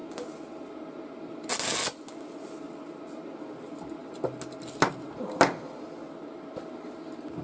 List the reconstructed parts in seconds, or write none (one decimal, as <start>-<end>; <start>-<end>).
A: none